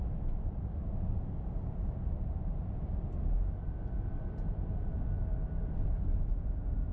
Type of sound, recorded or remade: recorded